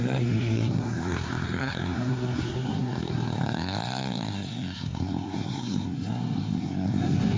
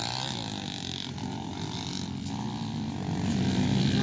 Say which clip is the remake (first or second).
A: first